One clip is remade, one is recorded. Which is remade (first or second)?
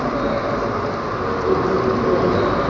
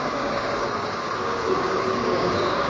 second